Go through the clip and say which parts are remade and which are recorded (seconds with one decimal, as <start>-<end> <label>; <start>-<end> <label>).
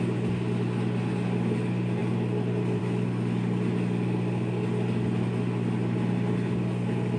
0.0-7.2 recorded